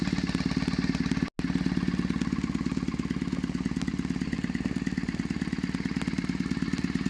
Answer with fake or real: real